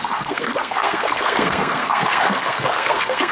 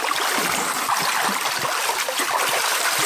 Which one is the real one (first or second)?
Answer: second